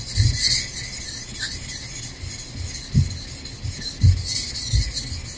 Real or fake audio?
real